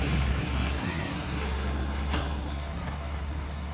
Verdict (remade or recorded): remade